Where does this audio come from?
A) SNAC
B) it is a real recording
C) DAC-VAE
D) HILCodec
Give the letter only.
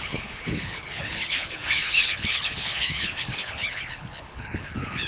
D